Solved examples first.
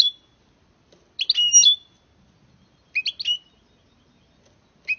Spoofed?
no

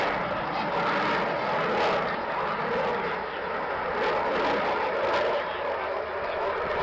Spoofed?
no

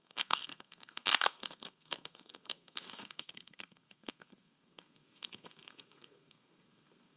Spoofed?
yes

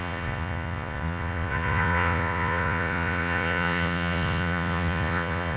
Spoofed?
yes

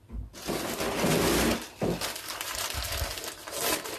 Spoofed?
no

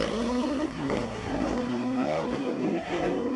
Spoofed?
yes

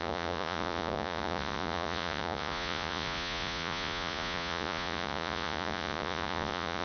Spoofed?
yes